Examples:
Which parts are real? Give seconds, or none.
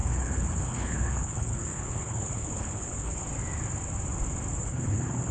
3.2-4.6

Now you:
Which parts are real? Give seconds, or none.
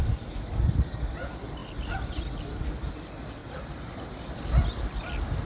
0.0-3.4; 4.4-5.4